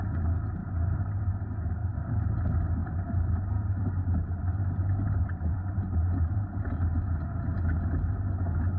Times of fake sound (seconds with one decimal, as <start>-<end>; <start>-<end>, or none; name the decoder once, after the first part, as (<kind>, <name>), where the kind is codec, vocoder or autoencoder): 0.6-1.2 (vocoder, BigVGAN v2); 1.8-2.4; 2.8-6.6